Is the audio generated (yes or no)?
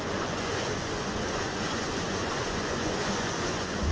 yes